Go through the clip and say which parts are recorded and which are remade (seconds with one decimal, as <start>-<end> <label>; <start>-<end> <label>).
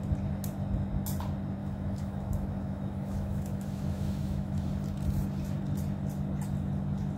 0.0-1.6 recorded; 1.6-4.7 remade; 4.7-7.2 recorded